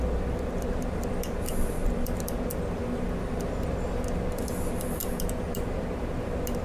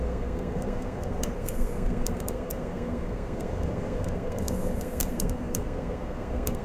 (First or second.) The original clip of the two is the first